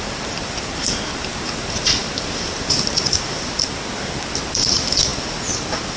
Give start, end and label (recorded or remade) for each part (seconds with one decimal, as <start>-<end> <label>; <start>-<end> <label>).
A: 0.0-6.0 recorded